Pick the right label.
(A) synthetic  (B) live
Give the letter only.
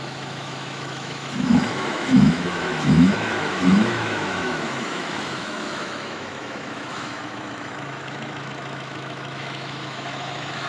A